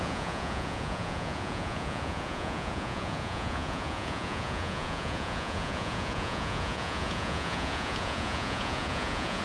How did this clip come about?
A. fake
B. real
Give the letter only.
A